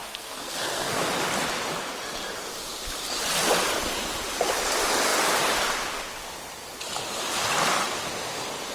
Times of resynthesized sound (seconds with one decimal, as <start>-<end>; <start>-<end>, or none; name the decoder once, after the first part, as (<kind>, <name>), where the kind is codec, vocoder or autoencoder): 0.0-1.0 (codec, SNAC)